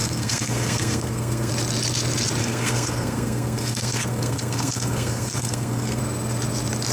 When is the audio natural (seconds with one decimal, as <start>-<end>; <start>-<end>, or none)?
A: 1.5-2.4; 6.0-6.9